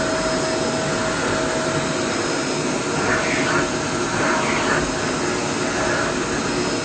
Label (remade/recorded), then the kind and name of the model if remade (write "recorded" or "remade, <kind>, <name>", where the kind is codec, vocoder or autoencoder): recorded